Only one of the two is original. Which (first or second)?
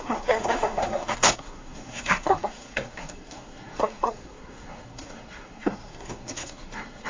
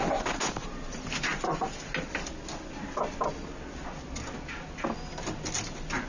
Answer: second